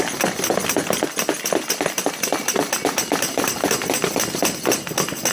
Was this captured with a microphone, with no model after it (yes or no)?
yes